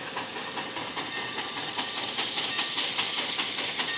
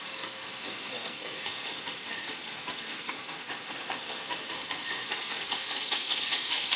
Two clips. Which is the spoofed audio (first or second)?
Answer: second